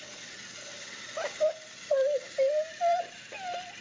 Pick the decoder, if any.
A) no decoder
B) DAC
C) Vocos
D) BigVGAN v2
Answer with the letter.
D